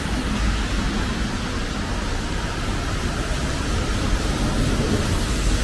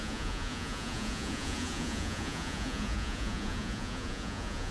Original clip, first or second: first